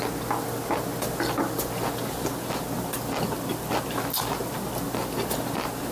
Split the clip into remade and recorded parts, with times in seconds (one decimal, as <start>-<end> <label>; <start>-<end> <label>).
0.0-5.9 recorded